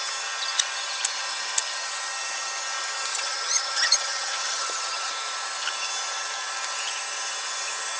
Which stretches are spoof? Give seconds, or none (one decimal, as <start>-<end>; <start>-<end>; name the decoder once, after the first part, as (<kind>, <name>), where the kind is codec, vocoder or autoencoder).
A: 3.1-5.1 (vocoder, HiFi-GAN)